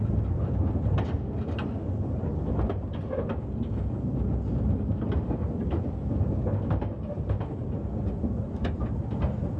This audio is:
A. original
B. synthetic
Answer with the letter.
A